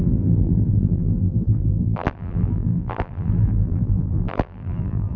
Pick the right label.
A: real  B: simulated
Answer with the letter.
B